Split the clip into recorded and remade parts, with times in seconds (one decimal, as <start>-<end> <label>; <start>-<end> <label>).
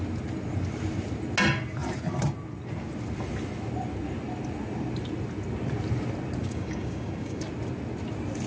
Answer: 0.0-6.4 recorded; 6.4-7.4 remade; 7.4-8.5 recorded